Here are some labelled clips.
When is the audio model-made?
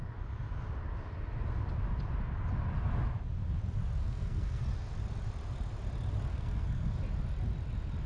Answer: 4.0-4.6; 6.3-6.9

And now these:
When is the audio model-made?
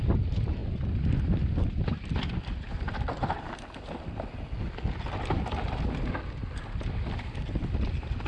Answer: none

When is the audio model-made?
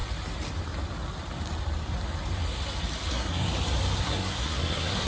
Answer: 3.1-3.5; 4.0-5.1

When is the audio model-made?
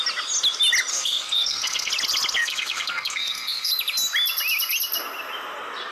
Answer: 0.9-1.9; 2.4-3.7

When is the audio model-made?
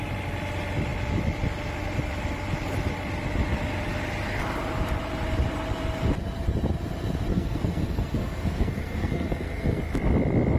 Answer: 7.3-9.8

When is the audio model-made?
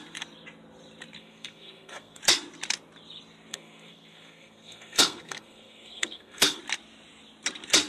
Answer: 1.2-2.2; 3.5-6.6